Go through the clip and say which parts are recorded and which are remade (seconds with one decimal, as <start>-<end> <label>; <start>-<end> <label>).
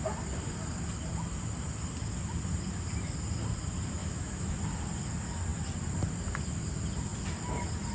0.0-4.0 recorded; 4.0-4.6 remade; 4.6-7.9 recorded